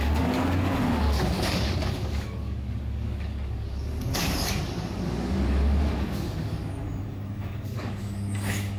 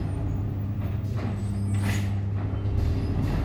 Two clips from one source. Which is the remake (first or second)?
first